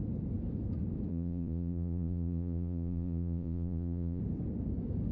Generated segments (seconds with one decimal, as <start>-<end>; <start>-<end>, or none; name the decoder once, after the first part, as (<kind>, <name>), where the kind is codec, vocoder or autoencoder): 1.1-4.2 (vocoder, Vocos)